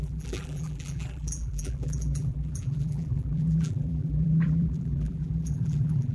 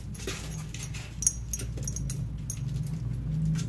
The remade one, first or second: first